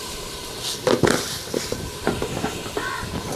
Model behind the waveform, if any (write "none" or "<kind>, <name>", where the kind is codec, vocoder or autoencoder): none